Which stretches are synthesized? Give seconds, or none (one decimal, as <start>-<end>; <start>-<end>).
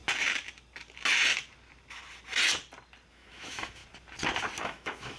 3.1-3.8; 4.6-5.2